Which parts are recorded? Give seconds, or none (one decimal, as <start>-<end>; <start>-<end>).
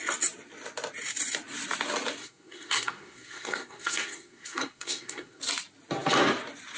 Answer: 0.0-2.2; 5.4-6.8